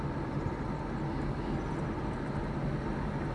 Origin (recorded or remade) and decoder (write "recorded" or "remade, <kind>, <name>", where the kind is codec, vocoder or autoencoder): recorded